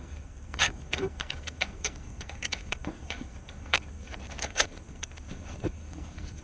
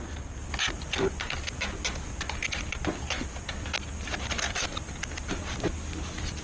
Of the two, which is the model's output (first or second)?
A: first